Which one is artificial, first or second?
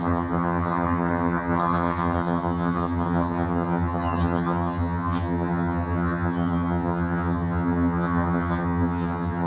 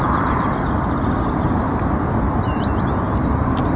first